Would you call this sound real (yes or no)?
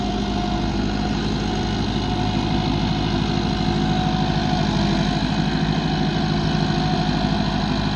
yes